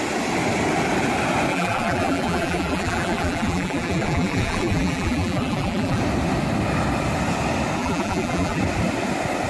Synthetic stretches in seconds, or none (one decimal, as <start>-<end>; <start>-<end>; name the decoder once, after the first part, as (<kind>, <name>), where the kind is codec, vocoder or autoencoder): 1.5-6.0 (vocoder, BigVGAN v2); 7.8-8.6